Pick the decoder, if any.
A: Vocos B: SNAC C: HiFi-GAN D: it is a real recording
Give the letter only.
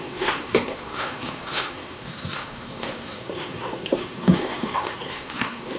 B